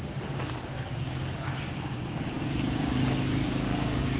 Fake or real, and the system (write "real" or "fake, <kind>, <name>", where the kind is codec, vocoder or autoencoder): fake, codec, DAC